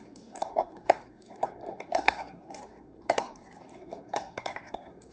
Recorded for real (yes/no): no